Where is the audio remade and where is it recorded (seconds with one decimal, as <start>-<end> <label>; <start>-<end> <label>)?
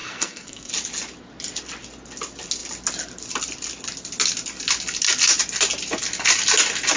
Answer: 0.0-0.7 remade; 0.7-7.0 recorded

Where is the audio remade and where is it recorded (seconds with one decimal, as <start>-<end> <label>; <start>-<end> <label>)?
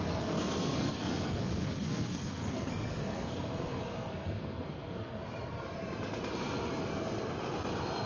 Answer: 0.0-5.2 remade; 5.2-8.1 recorded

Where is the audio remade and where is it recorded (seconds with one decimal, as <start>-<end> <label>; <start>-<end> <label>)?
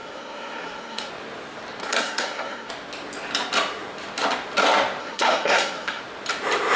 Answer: 0.0-1.1 remade; 1.1-1.8 recorded; 1.8-2.7 remade; 2.7-5.0 recorded; 5.0-6.0 remade; 6.0-6.8 recorded